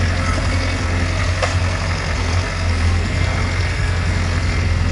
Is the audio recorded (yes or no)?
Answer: no